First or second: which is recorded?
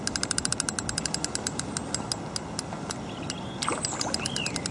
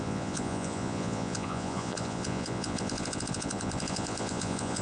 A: first